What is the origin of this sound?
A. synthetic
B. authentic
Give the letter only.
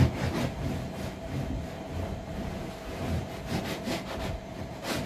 B